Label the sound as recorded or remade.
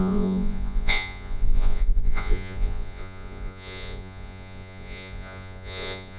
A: remade